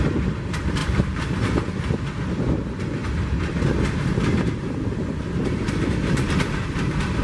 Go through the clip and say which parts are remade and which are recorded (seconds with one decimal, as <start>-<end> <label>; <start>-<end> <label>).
0.0-0.8 recorded; 0.8-2.5 remade; 2.5-3.0 recorded; 3.0-6.8 remade; 6.8-7.2 recorded